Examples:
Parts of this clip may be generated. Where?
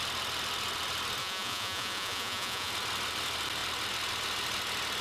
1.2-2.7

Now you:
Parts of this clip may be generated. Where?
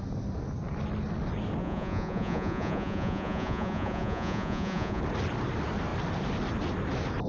1.6-5.0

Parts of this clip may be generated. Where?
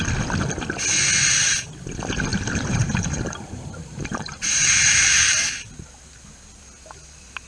2.3-5.5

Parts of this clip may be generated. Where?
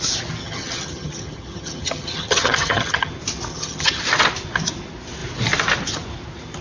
0.4-3.1; 3.5-4.0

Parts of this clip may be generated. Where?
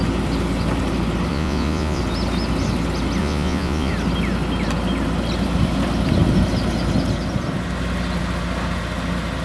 1.3-2.0; 3.2-3.9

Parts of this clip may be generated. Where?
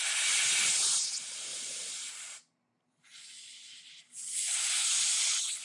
1.5-4.7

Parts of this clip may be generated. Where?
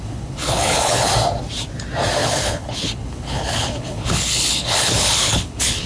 0.0-1.1; 2.2-5.9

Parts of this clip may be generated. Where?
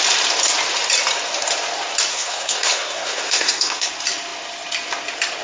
2.1-3.9